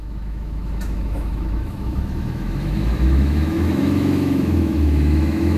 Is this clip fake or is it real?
fake